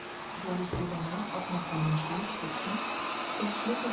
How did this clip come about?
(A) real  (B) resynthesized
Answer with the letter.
A